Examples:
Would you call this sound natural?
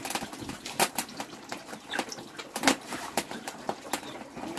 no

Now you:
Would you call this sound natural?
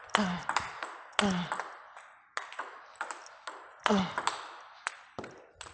yes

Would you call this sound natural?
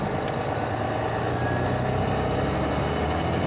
yes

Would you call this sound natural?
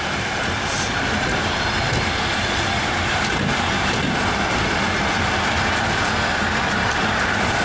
yes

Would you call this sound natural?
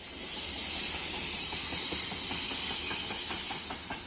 yes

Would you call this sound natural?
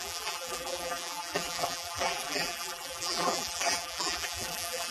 no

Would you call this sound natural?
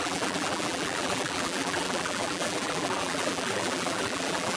no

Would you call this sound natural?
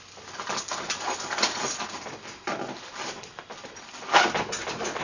yes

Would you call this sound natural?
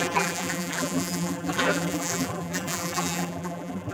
no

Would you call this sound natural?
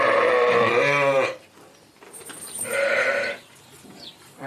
no